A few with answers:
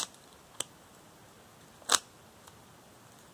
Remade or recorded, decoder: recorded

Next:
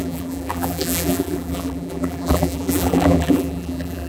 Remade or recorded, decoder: remade, vocoder, BigVGAN v2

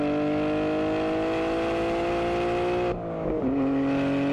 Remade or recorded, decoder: recorded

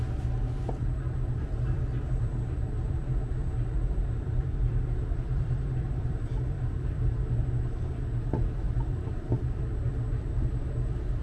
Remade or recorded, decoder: remade, vocoder, BigVGAN v2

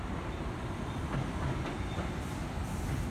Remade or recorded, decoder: recorded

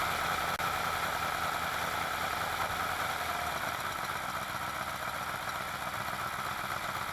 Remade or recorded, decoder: recorded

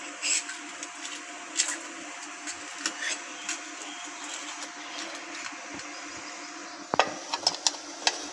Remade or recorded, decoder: recorded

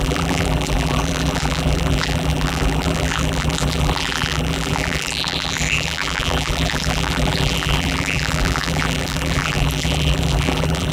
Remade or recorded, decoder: remade, vocoder, BigVGAN v2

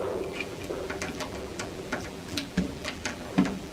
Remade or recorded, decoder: remade, vocoder, BigVGAN v2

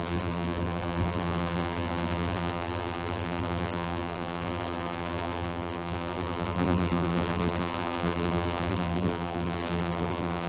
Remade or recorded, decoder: remade, vocoder, BigVGAN v2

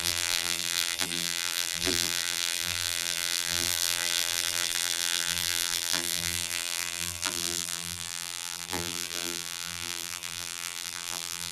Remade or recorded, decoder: remade, vocoder, BigVGAN v2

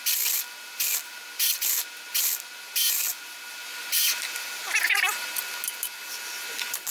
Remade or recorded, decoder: recorded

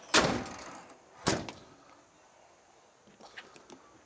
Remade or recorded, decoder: recorded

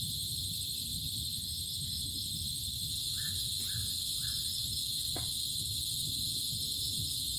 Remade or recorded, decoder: recorded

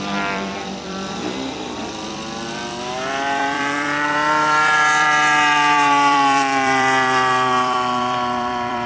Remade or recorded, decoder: remade, vocoder, BigVGAN v2